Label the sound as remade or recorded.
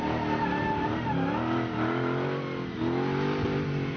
recorded